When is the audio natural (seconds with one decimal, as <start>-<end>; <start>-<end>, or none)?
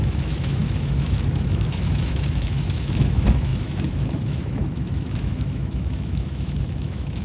none